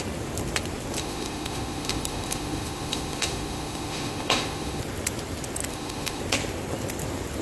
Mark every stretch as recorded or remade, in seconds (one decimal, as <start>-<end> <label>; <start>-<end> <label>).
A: 0.0-1.0 recorded; 1.0-4.8 remade; 4.8-5.7 recorded; 5.7-6.2 remade; 6.2-7.4 recorded